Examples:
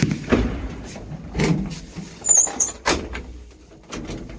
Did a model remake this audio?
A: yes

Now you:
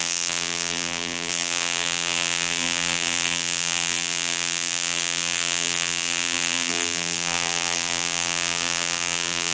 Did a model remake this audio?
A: yes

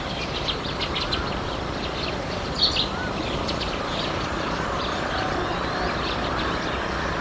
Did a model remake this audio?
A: yes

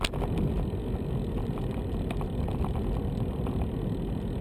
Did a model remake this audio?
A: no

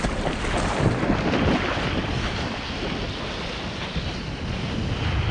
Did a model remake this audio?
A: no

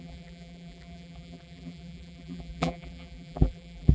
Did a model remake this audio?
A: yes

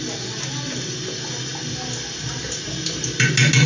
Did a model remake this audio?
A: no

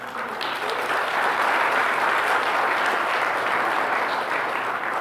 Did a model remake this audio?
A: yes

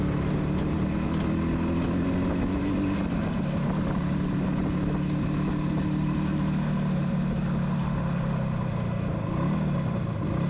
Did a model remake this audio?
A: no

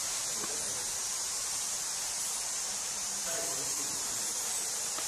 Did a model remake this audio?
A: yes